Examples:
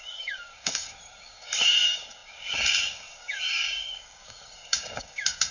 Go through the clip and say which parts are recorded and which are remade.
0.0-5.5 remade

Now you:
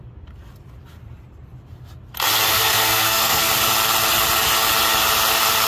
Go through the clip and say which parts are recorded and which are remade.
0.0-2.5 recorded; 2.5-3.5 remade; 3.5-5.7 recorded

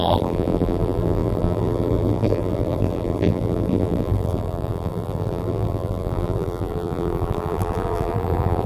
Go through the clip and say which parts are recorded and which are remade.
0.0-8.7 remade

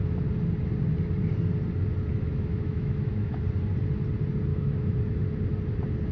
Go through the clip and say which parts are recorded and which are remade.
0.0-2.3 recorded; 2.3-3.4 remade; 3.4-4.5 recorded; 4.5-5.0 remade; 5.0-6.1 recorded

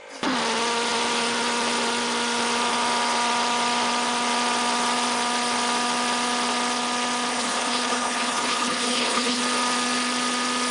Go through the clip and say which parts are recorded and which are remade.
0.0-7.3 recorded; 7.3-9.4 remade; 9.4-10.7 recorded

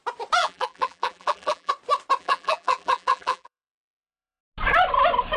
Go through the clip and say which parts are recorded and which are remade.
0.0-0.4 recorded; 0.4-1.7 remade; 1.7-2.2 recorded; 2.2-4.4 remade; 4.4-5.4 recorded